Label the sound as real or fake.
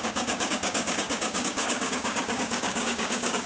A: fake